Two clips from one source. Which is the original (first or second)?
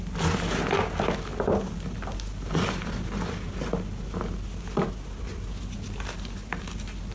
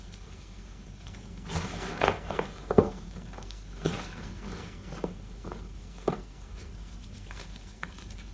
first